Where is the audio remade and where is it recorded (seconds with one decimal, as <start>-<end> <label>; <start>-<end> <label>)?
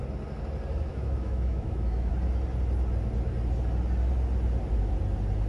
0.0-0.9 recorded; 0.9-2.1 remade; 2.1-5.5 recorded